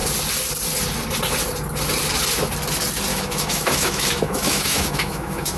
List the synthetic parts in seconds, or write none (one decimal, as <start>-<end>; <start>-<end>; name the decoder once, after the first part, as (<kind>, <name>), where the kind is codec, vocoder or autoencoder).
3.1-5.6 (autoencoder, DAC-VAE)

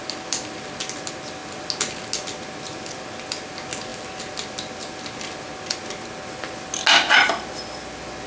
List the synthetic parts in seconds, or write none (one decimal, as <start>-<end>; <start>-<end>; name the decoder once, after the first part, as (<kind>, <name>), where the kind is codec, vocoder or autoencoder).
none

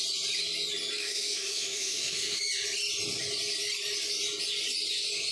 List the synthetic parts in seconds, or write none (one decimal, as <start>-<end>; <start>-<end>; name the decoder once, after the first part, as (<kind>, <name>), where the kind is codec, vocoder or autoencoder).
1.0-2.4 (autoencoder, DAC-VAE)

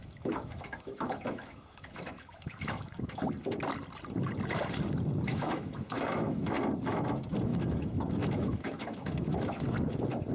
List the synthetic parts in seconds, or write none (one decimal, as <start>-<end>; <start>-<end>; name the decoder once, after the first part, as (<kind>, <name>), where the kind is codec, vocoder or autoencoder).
0.0-3.2 (autoencoder, DAC-VAE); 5.3-6.5; 7.5-9.6

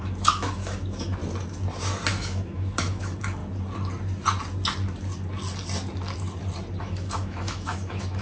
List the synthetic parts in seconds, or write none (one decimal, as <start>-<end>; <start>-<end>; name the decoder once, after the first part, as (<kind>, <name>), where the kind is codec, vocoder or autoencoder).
0.0-1.2 (autoencoder, DAC-VAE); 2.1-3.4; 6.8-8.2

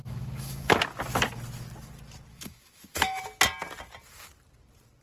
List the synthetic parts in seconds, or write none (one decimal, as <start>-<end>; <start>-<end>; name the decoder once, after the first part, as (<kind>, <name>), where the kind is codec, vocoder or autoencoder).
0.0-0.8 (autoencoder, DAC-VAE); 2.3-3.2

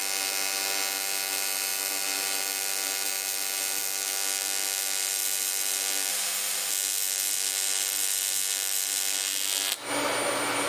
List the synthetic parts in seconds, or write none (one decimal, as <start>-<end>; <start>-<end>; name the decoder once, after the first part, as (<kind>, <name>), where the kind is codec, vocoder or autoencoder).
6.1-6.7 (autoencoder, DAC-VAE)